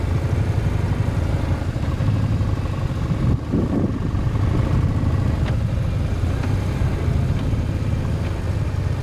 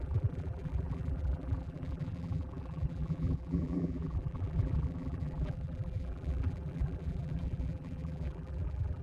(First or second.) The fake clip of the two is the second